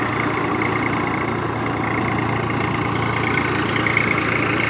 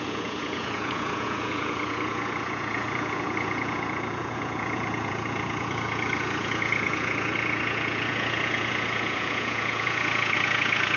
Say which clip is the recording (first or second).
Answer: first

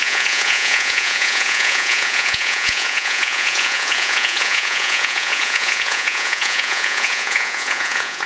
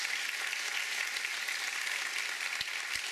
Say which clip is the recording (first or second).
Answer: second